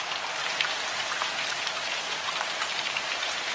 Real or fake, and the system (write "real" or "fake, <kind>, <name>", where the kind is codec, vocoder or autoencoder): fake, vocoder, BigVGAN v2